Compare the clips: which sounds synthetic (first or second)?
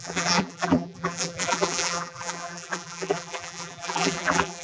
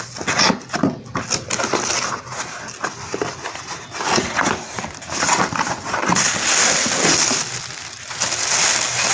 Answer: first